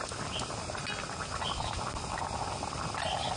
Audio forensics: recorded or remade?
recorded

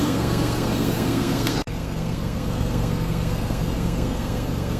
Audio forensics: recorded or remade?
remade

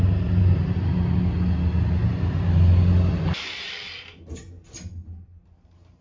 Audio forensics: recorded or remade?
recorded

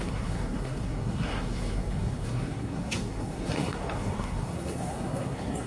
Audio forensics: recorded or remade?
remade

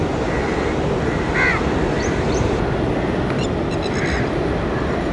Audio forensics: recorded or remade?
recorded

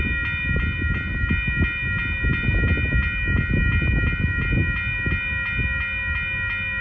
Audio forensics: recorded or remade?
recorded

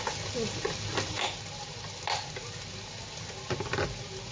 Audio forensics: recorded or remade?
recorded